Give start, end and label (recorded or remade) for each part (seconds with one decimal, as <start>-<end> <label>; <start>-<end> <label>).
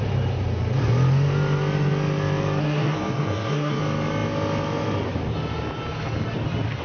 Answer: 0.0-2.6 recorded; 2.6-3.8 remade; 3.8-6.8 recorded